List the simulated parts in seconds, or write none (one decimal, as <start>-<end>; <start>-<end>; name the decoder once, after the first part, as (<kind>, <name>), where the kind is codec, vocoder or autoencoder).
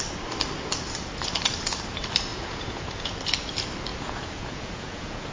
2.3-3.1 (vocoder, Vocos); 3.9-5.3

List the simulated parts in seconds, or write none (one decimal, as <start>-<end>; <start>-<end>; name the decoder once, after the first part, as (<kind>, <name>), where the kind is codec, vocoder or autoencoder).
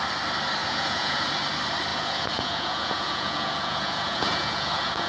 0.6-1.3 (vocoder, Vocos); 1.9-5.1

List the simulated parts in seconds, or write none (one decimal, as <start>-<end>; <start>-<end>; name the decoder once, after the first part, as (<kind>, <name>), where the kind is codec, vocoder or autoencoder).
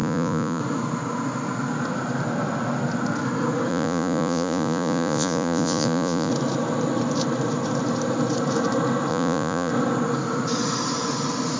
0.0-0.6 (vocoder, Vocos); 3.7-6.3; 9.1-9.7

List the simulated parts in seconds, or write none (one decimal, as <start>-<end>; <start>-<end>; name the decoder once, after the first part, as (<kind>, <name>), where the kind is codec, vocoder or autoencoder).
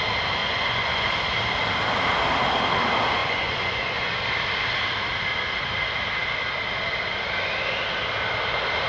0.4-1.1 (vocoder, Vocos); 3.2-4.1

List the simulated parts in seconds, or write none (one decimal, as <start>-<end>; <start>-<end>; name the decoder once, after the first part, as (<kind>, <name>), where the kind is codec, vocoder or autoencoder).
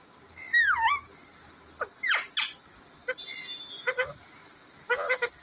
none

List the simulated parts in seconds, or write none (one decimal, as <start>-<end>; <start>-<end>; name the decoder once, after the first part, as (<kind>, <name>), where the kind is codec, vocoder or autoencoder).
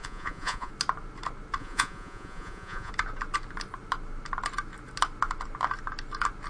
0.0-0.7 (vocoder, Vocos); 1.6-2.9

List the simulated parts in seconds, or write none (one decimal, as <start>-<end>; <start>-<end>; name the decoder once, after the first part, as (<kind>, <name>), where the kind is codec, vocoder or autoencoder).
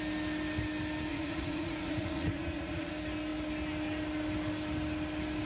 1.1-2.9 (vocoder, Vocos)